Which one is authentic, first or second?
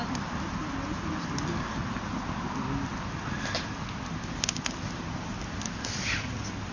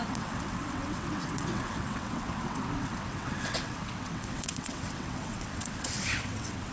first